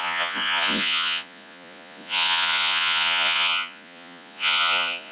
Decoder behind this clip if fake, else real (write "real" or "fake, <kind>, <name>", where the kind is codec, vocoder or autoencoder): fake, vocoder, Vocos